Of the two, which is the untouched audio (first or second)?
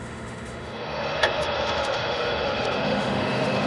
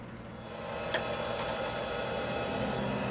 second